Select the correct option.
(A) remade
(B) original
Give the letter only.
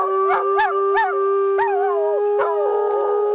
B